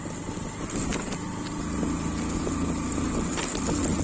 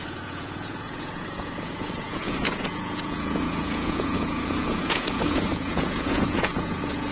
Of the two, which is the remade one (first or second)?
second